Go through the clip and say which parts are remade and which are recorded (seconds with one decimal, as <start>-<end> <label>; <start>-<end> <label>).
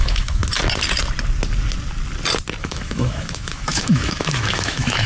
0.0-0.4 remade; 0.4-2.6 recorded; 2.6-5.1 remade